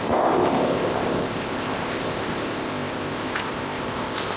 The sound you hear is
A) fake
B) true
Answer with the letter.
A